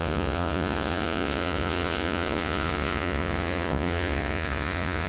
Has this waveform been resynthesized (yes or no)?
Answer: yes